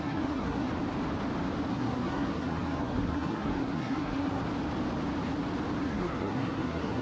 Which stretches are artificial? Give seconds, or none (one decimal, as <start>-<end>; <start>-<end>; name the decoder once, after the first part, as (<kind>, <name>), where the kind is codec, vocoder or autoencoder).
0.0-0.7 (codec, SNAC); 1.7-4.4; 5.8-7.0